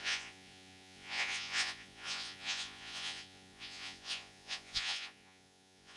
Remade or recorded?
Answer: remade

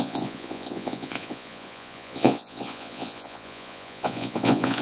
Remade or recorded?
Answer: remade